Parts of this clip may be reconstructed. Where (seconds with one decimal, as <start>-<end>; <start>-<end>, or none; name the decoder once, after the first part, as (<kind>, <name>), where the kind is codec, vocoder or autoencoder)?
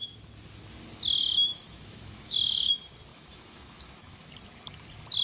1.5-2.7 (autoencoder, DAC-VAE); 3.1-4.3